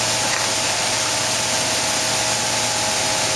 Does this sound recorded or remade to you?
recorded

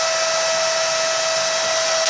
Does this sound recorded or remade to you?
recorded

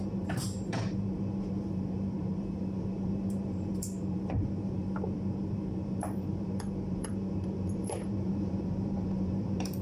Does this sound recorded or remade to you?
remade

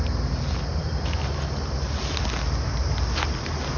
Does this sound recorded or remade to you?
recorded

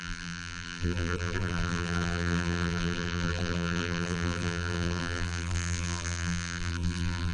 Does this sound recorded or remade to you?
remade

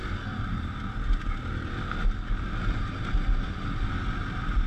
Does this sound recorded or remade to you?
recorded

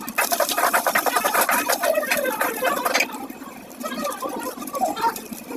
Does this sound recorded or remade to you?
remade